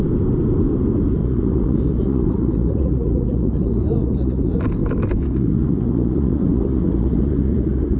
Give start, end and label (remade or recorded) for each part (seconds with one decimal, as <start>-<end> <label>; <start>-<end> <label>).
0.0-1.2 recorded; 1.2-4.6 remade; 4.6-5.2 recorded; 5.2-8.0 remade